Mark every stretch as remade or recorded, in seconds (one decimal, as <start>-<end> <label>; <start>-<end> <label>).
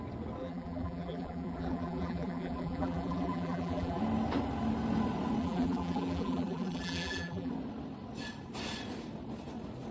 0.0-0.4 recorded; 0.4-4.0 remade; 4.0-5.4 recorded; 5.4-7.5 remade; 7.5-9.9 recorded